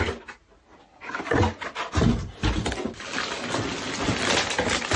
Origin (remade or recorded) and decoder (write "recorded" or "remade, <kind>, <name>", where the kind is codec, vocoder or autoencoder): recorded